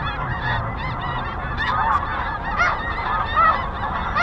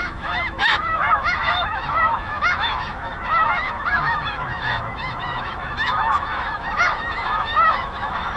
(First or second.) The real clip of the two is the first